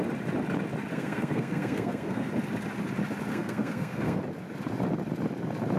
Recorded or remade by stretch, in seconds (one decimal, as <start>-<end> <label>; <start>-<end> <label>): 0.0-0.9 recorded; 0.9-2.3 remade; 2.3-3.3 recorded; 3.3-4.2 remade; 4.2-5.8 recorded